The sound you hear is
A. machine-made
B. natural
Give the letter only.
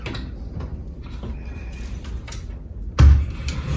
B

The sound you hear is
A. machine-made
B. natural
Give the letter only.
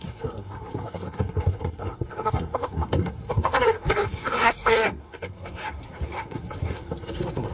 A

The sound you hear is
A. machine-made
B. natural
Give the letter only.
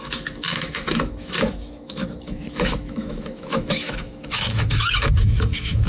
A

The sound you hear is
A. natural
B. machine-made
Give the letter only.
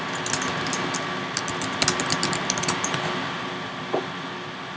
A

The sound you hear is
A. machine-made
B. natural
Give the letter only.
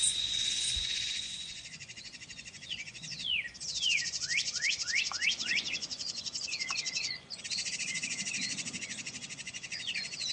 A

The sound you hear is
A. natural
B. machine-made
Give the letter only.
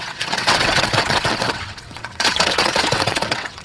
B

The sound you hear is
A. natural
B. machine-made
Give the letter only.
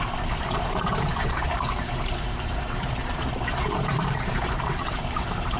B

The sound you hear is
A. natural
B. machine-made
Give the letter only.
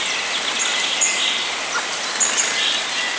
A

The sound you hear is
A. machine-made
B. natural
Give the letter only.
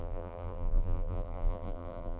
A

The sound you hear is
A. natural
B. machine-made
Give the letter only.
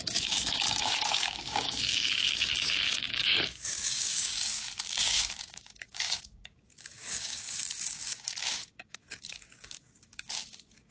B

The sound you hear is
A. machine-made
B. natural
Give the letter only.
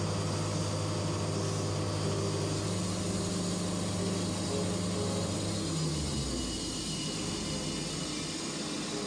B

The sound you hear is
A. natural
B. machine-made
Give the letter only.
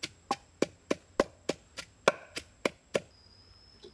A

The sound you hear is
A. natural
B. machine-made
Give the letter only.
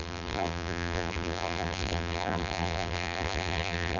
B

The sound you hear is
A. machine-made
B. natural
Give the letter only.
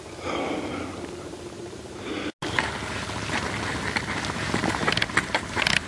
B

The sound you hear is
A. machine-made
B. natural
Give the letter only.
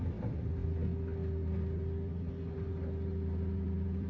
B